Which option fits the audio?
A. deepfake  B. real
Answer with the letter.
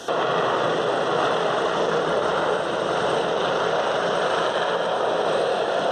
A